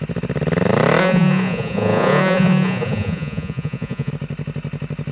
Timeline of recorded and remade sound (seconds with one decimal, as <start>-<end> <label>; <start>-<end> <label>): 0.0-1.0 recorded; 1.0-4.1 remade; 4.1-5.1 recorded